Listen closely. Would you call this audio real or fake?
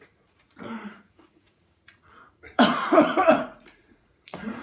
fake